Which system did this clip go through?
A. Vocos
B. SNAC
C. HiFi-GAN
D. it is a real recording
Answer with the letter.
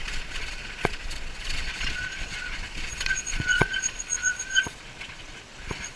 A